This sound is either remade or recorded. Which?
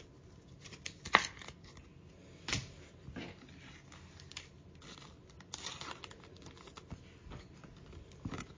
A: recorded